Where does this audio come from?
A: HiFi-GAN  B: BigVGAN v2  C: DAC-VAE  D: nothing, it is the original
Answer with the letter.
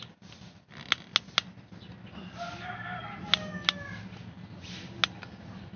D